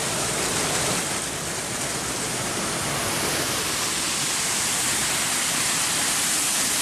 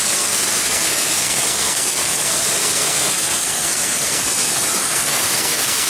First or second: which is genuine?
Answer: first